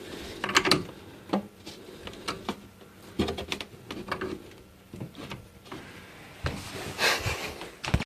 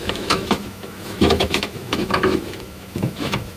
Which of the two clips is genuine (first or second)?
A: first